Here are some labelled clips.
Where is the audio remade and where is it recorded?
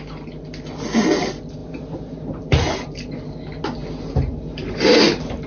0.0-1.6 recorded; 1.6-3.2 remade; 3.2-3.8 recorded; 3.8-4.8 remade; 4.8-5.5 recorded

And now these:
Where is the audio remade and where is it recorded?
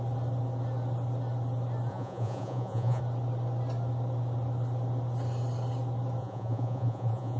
0.0-1.9 recorded; 1.9-3.0 remade; 3.0-6.2 recorded; 6.2-7.4 remade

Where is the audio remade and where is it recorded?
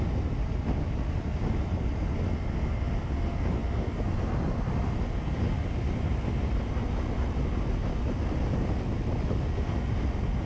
0.0-10.5 recorded